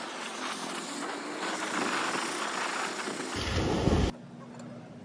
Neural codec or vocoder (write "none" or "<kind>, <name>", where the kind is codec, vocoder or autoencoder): none